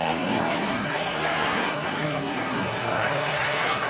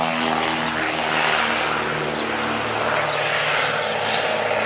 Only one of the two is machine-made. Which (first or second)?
first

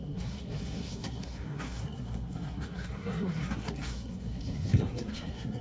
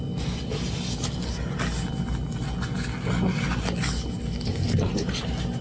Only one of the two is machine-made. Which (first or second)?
first